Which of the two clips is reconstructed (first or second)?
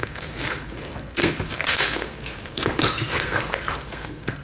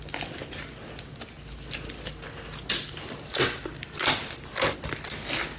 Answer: first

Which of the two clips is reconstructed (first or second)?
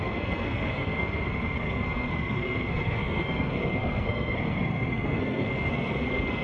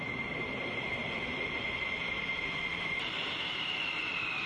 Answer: first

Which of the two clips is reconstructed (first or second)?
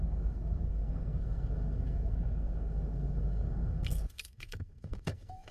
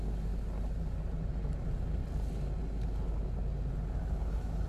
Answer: first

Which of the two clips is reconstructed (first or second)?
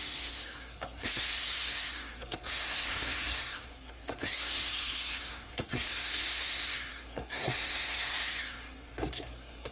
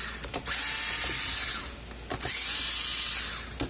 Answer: first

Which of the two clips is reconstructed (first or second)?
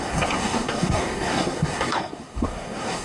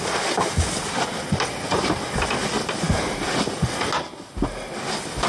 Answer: first